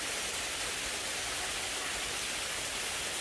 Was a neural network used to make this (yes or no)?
no